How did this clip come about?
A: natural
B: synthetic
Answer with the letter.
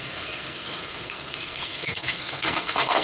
B